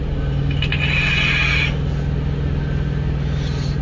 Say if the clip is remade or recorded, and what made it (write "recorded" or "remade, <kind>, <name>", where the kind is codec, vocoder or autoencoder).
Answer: recorded